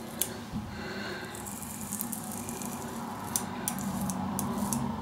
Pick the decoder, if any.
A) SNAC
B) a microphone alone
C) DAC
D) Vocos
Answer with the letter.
B